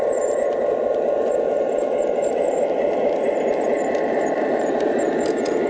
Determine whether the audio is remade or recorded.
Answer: recorded